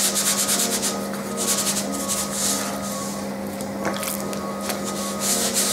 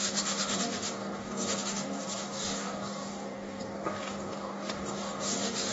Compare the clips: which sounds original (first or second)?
first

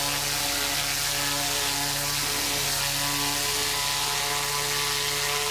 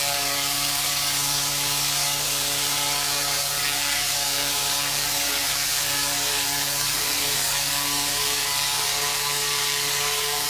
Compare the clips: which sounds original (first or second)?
first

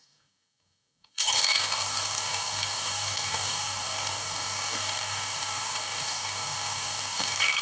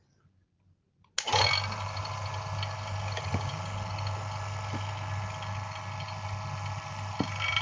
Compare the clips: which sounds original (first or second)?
second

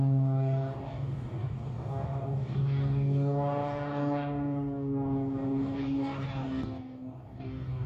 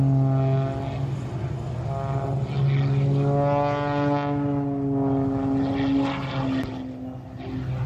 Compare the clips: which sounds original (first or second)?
second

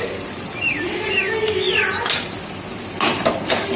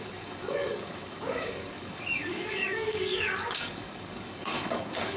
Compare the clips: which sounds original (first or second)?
first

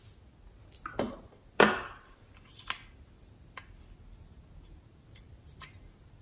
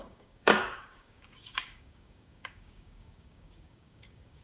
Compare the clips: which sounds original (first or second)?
first